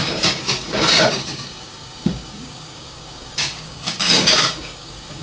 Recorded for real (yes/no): no